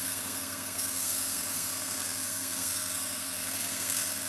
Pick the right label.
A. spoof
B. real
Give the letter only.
A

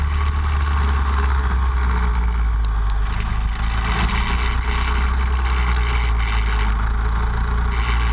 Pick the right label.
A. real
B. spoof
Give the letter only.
A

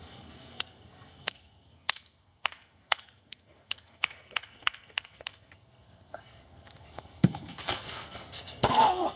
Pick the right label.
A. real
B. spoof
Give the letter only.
B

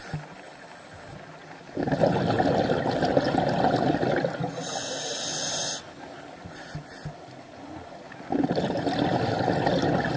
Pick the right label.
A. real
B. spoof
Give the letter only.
A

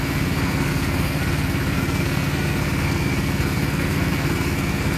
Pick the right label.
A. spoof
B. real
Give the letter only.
A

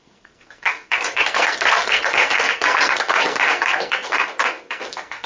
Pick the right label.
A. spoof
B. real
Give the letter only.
A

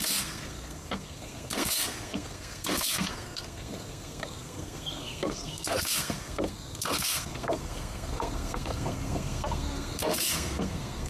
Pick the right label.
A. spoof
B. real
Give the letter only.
A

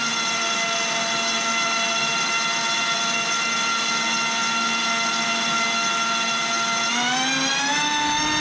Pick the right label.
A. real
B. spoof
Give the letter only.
A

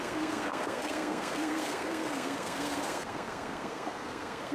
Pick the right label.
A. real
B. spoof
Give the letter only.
B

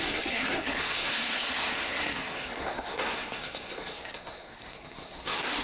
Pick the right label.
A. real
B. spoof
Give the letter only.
B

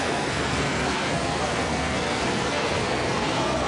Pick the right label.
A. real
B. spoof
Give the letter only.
B